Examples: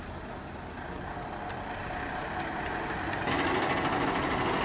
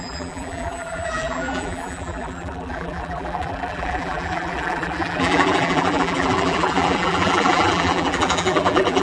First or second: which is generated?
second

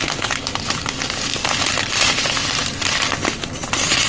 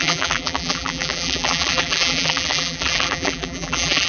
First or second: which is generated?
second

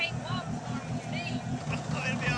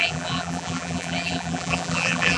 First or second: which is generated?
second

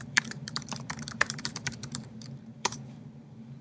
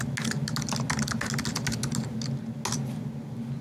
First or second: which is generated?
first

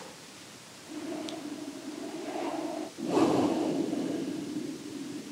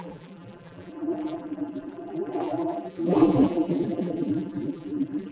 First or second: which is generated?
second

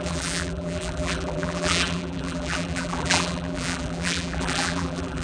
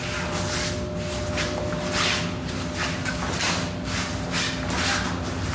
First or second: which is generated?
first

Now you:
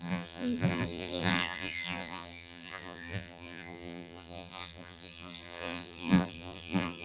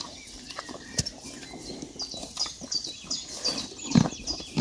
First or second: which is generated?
first